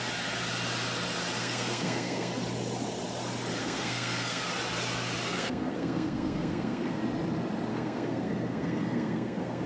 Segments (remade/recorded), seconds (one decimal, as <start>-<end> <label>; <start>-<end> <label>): 0.0-1.4 recorded; 1.4-2.3 remade; 2.3-3.6 recorded; 3.6-4.4 remade; 4.4-5.3 recorded; 5.3-7.0 remade; 7.0-7.7 recorded; 7.7-9.7 remade